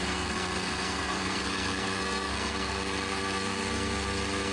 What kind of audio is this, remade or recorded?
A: remade